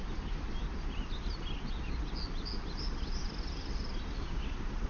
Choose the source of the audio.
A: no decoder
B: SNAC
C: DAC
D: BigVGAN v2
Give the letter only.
A